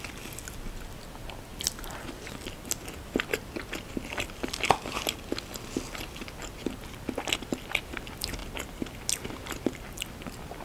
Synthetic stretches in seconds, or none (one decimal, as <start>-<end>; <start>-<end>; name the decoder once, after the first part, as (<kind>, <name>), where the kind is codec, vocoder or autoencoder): 8.4-9.6 (vocoder, BigVGAN v2)